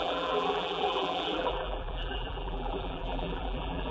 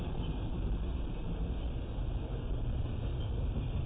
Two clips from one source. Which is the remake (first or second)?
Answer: first